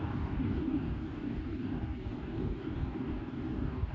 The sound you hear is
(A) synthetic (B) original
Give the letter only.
A